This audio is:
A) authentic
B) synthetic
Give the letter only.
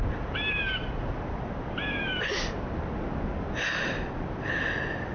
A